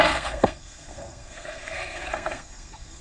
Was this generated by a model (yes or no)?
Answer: yes